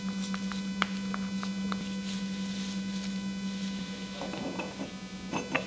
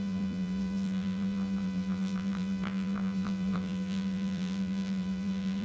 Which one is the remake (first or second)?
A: second